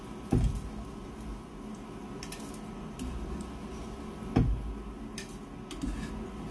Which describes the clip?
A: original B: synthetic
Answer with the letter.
A